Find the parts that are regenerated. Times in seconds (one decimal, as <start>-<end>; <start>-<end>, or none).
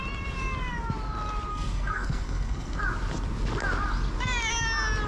1.5-2.8